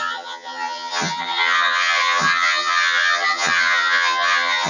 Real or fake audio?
fake